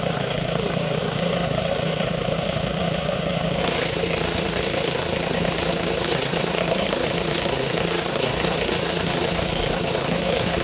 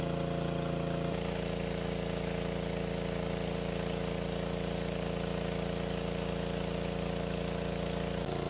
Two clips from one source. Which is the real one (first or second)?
second